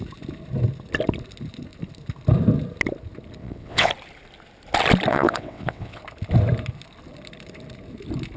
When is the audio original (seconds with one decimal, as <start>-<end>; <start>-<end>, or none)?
0.0-3.4; 3.9-5.1; 6.0-8.4